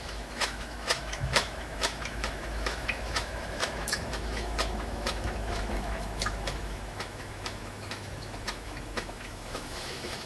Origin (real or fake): fake